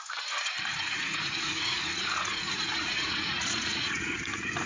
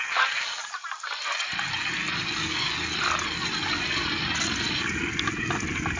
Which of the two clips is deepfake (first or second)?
first